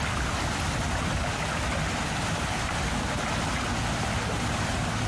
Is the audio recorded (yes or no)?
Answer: yes